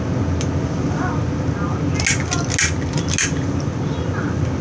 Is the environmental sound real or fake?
real